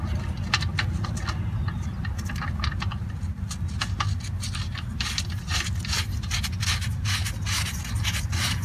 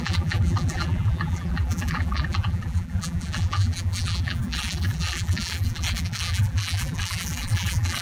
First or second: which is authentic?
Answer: first